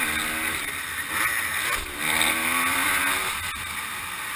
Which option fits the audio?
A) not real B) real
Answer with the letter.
B